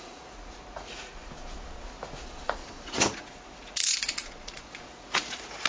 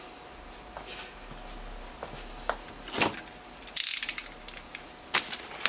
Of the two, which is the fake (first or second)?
first